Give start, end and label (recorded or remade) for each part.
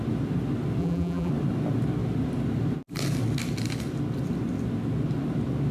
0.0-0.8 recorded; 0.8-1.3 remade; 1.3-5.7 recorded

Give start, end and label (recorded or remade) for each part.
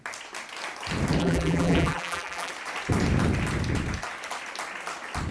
0.0-1.2 recorded; 1.2-2.5 remade; 2.5-5.3 recorded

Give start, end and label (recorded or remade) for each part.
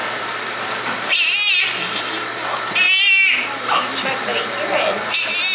0.0-2.0 remade; 2.0-2.8 recorded; 2.8-4.4 remade; 4.4-5.5 recorded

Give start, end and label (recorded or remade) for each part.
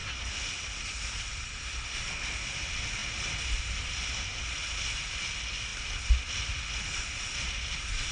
0.0-3.0 recorded; 3.0-4.4 remade; 4.4-8.1 recorded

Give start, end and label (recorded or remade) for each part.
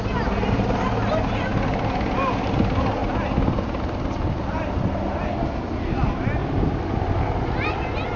0.0-6.4 recorded; 6.4-7.2 remade; 7.2-8.2 recorded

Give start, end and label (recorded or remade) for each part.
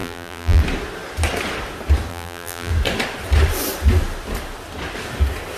0.0-0.6 remade; 0.6-2.1 recorded; 2.1-2.7 remade; 2.7-5.6 recorded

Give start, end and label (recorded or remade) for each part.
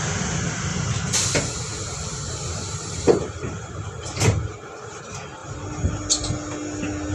0.0-0.7 recorded; 0.7-5.0 remade; 5.0-5.4 recorded; 5.4-5.9 remade; 5.9-7.1 recorded